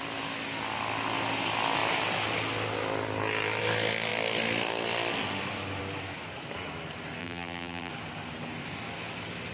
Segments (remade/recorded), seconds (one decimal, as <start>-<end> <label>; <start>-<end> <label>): 0.0-7.2 recorded; 7.2-7.9 remade; 7.9-9.5 recorded